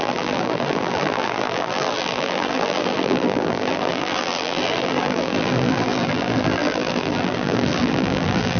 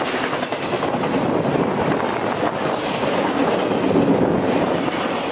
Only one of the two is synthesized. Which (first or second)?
first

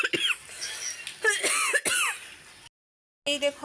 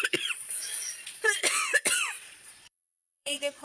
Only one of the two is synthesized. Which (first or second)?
second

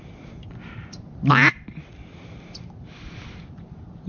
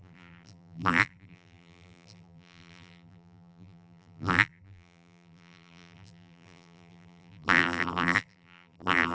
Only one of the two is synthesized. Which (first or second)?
second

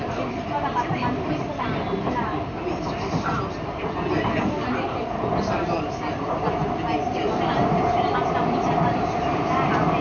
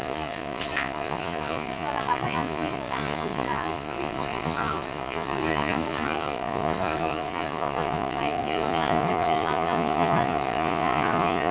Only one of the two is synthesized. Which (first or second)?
second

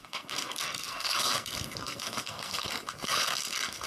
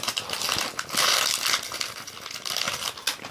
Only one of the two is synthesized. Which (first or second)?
first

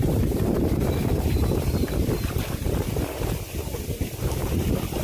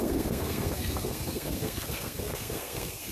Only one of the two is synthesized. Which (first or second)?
second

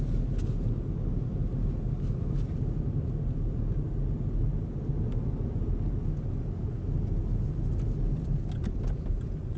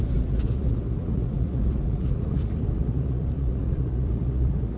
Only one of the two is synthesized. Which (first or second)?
second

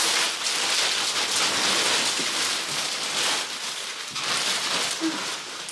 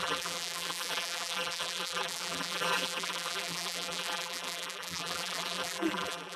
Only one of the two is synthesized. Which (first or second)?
second